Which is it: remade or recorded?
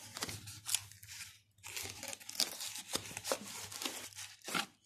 recorded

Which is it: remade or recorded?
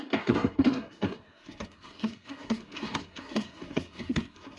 remade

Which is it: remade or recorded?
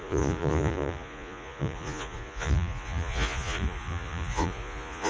remade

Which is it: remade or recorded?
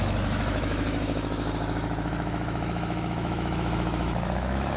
remade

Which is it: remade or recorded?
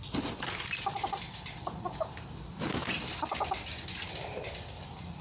recorded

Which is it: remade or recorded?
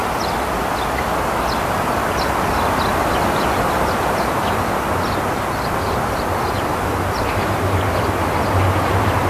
recorded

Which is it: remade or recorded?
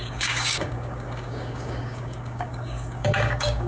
remade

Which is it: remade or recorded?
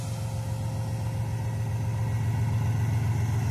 recorded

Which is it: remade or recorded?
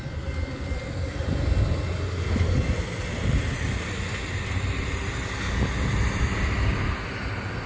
recorded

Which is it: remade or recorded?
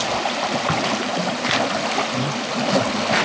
recorded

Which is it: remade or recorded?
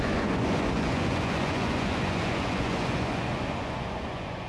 remade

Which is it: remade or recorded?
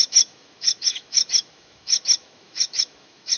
remade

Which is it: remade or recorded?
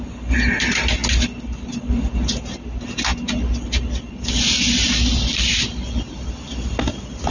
recorded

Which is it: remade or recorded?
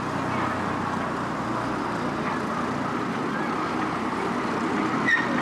recorded